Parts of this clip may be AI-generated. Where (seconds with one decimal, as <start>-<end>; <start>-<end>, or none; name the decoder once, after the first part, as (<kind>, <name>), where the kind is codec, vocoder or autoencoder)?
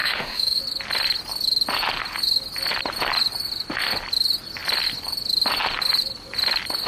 0.0-0.6 (autoencoder, DAC-VAE)